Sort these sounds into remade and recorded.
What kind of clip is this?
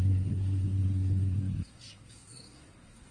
remade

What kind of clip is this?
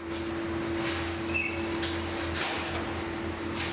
recorded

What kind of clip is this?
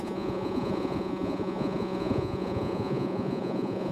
remade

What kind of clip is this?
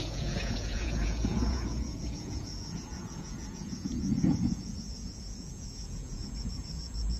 remade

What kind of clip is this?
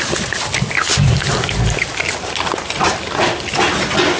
recorded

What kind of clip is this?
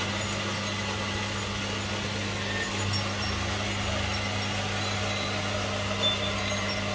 recorded